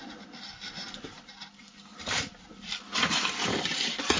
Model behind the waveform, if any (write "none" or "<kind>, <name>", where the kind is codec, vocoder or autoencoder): none